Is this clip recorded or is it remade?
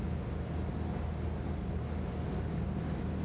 recorded